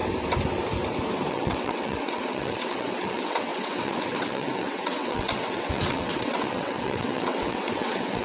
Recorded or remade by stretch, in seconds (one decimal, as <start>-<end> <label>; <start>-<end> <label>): 0.0-1.3 recorded; 1.3-8.2 remade